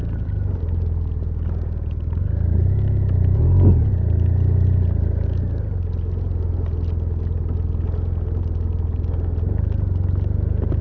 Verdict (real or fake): real